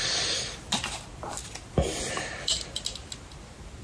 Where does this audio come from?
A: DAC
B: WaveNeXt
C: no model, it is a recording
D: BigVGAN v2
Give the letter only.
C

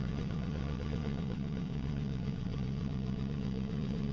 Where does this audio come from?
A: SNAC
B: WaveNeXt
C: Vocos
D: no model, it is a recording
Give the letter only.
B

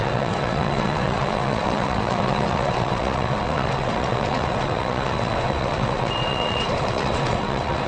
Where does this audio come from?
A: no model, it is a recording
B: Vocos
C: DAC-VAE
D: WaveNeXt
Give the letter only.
D